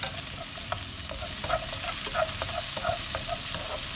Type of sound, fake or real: real